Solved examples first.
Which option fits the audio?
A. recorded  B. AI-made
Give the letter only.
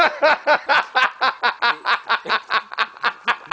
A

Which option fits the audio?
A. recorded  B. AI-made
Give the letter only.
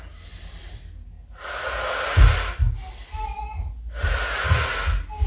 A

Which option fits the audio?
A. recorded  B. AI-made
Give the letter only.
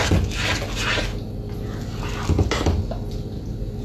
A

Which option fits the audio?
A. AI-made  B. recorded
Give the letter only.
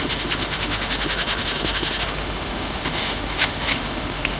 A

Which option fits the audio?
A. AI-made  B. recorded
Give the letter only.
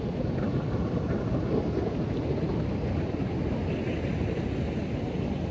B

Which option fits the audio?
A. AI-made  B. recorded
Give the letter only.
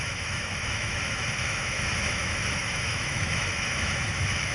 A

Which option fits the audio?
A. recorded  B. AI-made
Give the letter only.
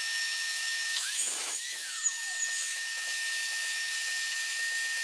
B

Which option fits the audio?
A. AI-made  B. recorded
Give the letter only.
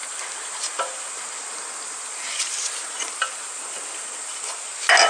B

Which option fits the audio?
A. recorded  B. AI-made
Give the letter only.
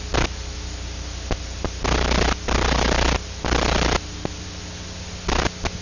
A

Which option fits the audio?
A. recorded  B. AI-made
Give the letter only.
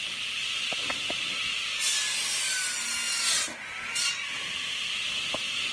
A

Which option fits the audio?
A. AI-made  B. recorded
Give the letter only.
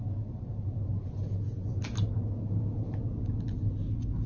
B